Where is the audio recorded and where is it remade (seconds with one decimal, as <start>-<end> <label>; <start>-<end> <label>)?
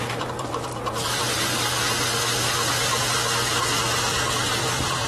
0.0-1.5 remade; 1.5-4.6 recorded; 4.6-5.1 remade